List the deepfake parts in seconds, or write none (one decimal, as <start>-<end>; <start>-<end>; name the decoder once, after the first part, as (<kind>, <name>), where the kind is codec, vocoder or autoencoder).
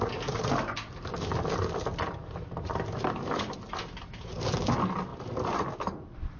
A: none